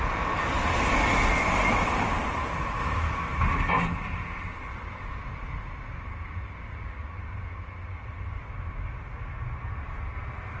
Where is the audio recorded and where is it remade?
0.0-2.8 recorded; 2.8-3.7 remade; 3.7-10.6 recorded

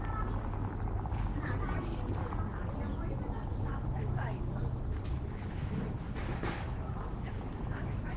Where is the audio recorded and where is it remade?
0.0-3.5 recorded; 3.5-4.4 remade; 4.4-5.1 recorded; 5.1-8.2 remade